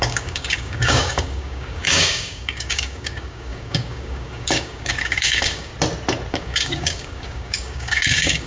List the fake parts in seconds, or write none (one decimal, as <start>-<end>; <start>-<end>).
0.0-5.7; 6.3-8.5